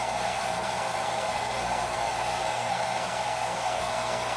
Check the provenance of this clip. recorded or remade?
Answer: remade